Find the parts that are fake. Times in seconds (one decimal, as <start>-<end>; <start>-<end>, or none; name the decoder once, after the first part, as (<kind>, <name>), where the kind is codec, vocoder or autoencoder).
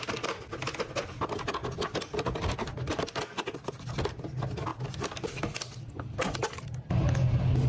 none